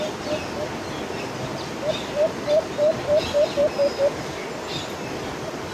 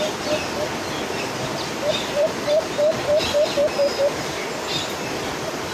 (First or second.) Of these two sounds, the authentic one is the first